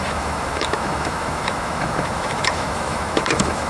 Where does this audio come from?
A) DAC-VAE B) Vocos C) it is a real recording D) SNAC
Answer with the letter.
A